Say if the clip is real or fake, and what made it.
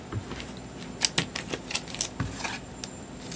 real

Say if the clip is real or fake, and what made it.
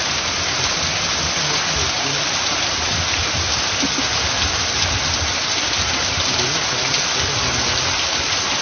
real